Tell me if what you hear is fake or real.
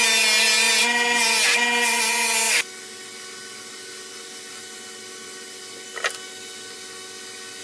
real